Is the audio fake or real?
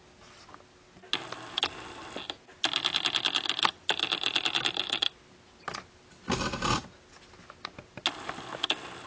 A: real